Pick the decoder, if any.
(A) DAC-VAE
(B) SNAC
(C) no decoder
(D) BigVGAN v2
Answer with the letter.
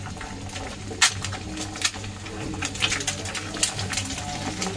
C